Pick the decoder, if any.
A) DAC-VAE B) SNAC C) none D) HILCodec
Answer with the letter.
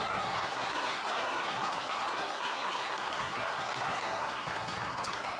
B